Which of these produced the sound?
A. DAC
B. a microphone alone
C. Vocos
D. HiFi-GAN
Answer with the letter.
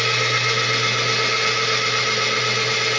B